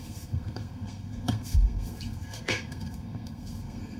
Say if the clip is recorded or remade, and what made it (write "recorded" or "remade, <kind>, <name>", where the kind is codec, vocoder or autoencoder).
remade, codec, SNAC